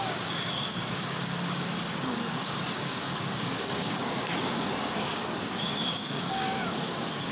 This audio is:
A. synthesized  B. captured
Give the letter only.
A